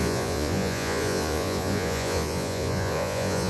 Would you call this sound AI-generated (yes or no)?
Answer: yes